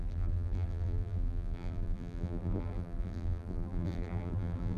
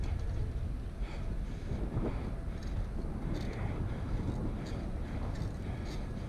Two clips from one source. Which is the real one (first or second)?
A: second